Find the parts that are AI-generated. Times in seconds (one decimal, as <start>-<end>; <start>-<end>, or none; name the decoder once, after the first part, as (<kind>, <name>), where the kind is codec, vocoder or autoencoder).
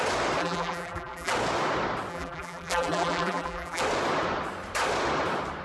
0.4-1.3 (vocoder, BigVGAN v2); 2.1-3.8